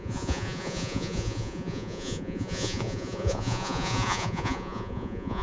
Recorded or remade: remade